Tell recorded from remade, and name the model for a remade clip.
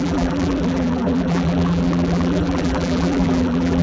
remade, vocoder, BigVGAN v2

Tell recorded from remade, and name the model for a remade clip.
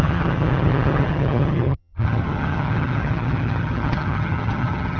remade, vocoder, HiFi-GAN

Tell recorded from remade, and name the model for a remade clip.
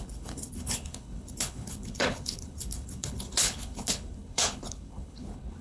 remade, codec, HILCodec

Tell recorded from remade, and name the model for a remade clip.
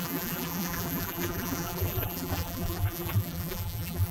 remade, vocoder, BigVGAN v2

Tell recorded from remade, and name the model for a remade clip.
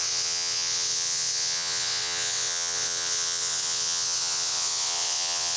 remade, vocoder, WaveNeXt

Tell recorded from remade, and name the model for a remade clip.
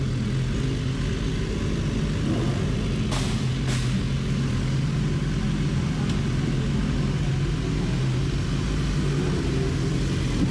recorded